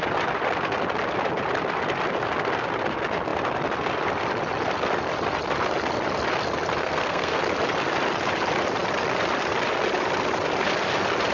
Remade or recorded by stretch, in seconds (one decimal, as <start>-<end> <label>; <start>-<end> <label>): 0.0-6.8 recorded; 6.8-7.4 remade; 7.4-11.3 recorded